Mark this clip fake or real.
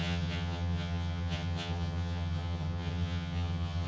fake